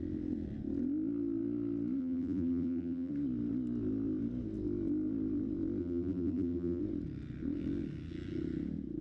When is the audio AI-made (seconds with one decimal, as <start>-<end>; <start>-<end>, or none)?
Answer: 2.0-3.1; 5.8-6.8

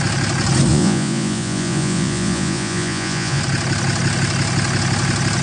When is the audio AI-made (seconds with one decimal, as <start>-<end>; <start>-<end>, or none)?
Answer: 0.7-3.4

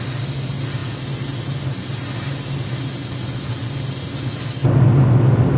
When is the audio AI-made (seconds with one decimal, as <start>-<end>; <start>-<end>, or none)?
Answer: none

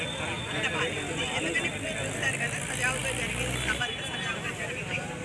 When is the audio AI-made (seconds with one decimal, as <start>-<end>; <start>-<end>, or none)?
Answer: none

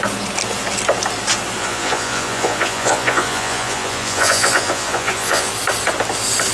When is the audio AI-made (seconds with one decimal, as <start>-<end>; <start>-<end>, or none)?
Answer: 1.6-5.5